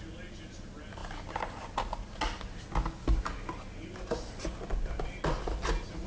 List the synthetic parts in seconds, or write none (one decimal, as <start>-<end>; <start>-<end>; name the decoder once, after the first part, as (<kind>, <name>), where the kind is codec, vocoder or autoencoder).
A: none